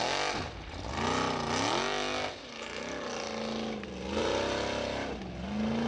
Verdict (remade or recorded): recorded